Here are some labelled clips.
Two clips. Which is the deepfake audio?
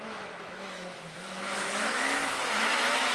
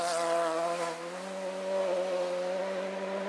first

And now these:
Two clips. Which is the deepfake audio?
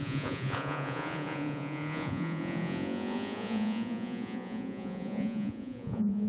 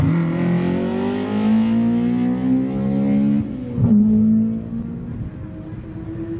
first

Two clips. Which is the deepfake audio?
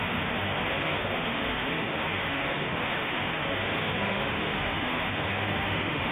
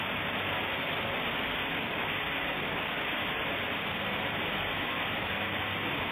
first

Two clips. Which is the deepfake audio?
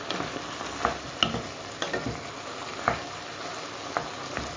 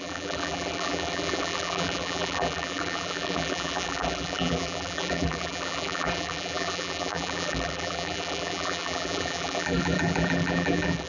second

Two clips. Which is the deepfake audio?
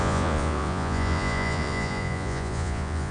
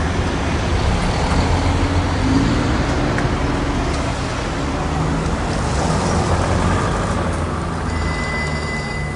first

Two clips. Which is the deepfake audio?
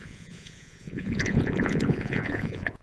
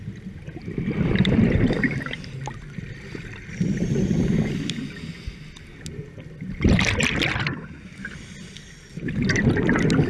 first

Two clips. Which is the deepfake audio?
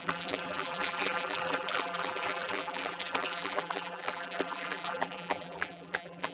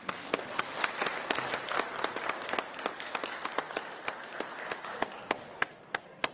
first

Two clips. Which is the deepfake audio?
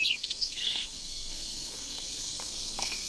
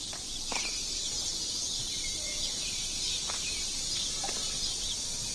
first